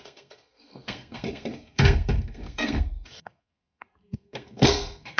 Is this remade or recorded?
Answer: remade